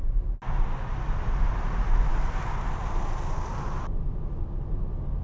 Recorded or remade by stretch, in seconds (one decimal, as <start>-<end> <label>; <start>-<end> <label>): 0.0-5.2 recorded